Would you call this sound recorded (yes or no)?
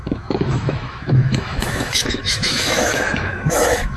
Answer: no